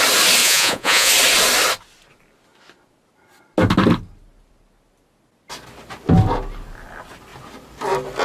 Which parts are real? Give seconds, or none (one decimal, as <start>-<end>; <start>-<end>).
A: 0.0-0.4; 1.1-8.2